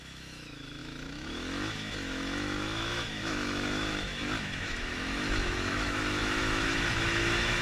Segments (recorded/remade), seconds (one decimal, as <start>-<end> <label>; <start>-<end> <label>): 0.0-7.6 remade